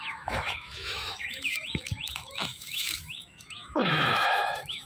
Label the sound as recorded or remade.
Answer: remade